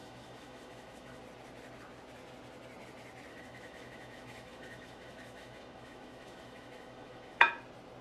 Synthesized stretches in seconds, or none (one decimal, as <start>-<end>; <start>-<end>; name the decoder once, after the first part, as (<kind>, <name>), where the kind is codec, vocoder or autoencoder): 0.0-1.2 (autoencoder, DAC-VAE); 3.3-7.5